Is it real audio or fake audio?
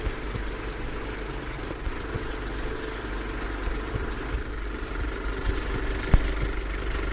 real